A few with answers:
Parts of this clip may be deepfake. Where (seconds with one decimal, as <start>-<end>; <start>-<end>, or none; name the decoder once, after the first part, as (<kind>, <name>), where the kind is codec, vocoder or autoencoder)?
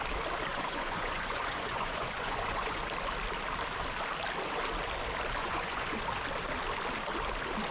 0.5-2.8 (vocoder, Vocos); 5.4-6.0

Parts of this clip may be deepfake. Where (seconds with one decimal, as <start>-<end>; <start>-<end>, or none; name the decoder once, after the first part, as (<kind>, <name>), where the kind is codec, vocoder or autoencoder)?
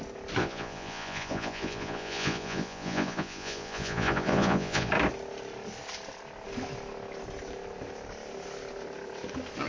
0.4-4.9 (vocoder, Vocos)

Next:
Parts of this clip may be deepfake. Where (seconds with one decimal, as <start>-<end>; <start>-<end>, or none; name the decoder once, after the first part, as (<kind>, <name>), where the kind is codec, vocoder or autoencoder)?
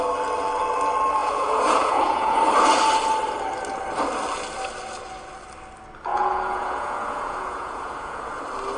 1.2-2.4 (vocoder, Vocos); 6.1-8.4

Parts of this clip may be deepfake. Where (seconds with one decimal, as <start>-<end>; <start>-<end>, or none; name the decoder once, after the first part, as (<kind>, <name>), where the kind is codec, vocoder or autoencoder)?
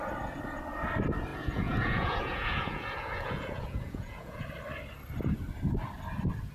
1.3-4.4 (vocoder, Vocos)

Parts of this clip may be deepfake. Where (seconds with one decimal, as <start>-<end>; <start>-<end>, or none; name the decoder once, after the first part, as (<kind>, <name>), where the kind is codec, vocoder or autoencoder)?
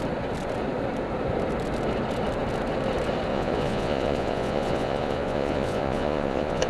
3.3-6.7 (vocoder, Vocos)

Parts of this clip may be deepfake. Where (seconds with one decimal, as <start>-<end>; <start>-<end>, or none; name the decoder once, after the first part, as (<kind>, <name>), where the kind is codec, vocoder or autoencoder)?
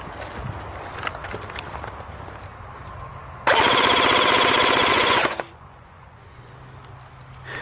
4.9-6.5 (vocoder, Vocos)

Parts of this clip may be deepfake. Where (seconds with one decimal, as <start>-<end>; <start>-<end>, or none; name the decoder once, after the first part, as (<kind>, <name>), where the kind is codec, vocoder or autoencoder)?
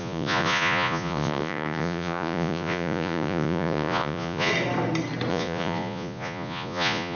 0.0-4.5 (vocoder, Vocos); 5.3-7.2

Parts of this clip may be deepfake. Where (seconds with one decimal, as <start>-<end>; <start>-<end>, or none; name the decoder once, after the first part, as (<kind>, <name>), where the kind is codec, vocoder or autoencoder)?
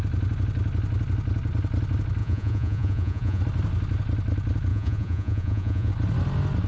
2.2-3.4 (vocoder, Vocos); 4.7-5.9